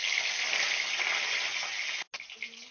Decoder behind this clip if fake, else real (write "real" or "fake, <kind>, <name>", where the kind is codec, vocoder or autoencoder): real